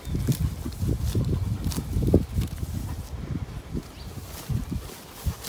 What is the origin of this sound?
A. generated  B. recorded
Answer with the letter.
B